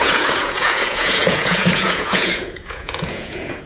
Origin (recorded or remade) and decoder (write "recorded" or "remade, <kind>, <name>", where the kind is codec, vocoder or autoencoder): remade, vocoder, Vocos